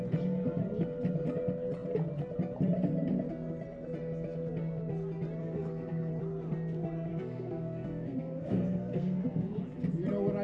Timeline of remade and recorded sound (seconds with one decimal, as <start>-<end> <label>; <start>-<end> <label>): 0.0-5.4 recorded; 5.4-6.1 remade; 6.1-7.1 recorded; 7.1-9.2 remade; 9.2-10.4 recorded